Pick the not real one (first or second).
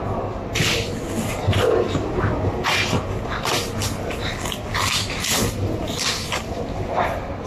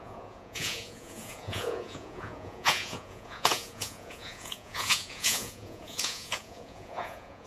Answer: second